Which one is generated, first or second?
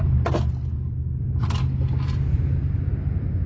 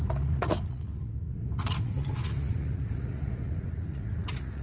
second